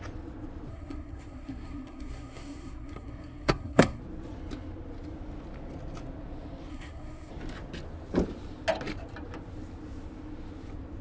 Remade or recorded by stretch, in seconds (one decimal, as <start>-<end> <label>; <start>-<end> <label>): 0.0-0.7 recorded; 0.7-4.0 remade; 4.0-6.7 recorded; 6.7-7.3 remade; 7.3-11.0 recorded